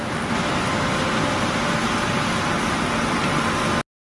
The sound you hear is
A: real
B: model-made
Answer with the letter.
A